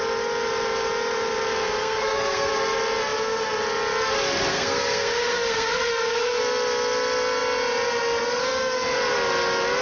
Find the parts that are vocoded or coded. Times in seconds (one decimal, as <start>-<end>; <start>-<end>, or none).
1.8-2.5; 4.5-6.4